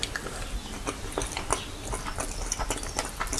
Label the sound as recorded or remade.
recorded